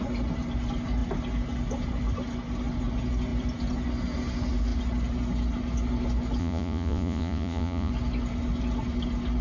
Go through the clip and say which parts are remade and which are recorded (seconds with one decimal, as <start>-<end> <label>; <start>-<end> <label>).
0.0-6.4 recorded; 6.4-7.9 remade; 7.9-9.4 recorded